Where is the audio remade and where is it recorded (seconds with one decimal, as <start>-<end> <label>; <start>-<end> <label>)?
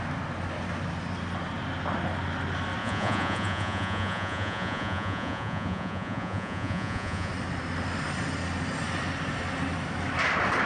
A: 0.0-2.8 recorded; 2.8-7.3 remade; 7.3-10.7 recorded